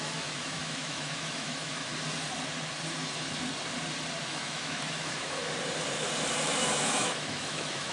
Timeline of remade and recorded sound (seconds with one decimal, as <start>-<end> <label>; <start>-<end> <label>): 0.0-1.9 remade; 1.9-4.2 recorded; 4.2-5.4 remade; 5.4-6.6 recorded; 6.6-7.9 remade